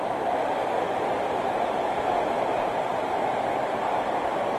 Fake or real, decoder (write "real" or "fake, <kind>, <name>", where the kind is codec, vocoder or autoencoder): real